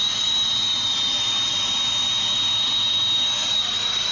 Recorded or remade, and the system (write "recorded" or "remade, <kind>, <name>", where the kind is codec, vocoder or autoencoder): recorded